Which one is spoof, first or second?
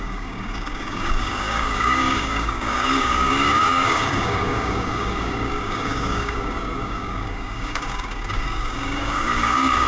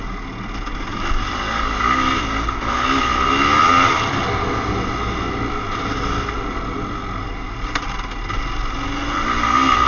first